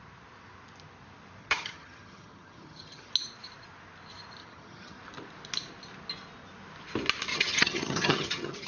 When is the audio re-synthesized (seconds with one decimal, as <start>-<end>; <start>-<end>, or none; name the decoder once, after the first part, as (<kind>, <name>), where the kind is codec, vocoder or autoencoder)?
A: 1.4-3.1 (vocoder, HiFi-GAN); 4.4-5.0; 7.3-8.7